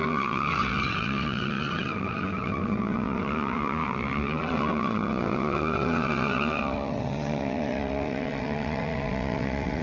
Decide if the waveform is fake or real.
fake